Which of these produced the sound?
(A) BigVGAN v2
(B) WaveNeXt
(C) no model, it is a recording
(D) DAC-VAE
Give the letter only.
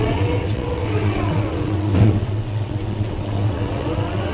B